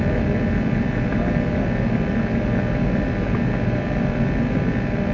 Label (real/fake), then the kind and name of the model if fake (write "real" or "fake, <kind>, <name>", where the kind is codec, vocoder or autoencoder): real